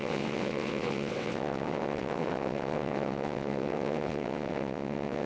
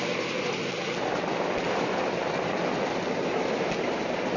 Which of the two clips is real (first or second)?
second